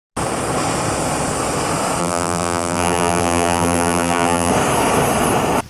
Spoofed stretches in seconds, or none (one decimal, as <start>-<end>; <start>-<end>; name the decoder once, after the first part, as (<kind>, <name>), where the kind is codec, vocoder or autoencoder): 2.0-4.5 (vocoder, BigVGAN v2)